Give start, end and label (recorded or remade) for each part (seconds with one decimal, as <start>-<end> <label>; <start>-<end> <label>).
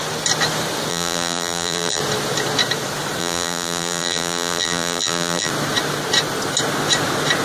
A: 0.0-0.9 recorded; 0.9-2.0 remade; 2.0-3.2 recorded; 3.2-5.5 remade; 5.5-7.4 recorded